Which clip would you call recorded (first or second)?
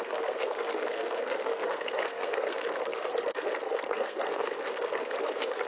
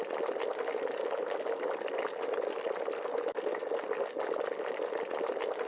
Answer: second